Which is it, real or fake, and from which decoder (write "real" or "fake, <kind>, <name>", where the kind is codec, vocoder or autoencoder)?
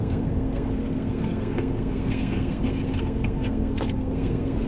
fake, codec, SNAC